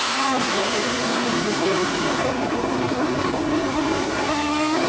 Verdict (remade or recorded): remade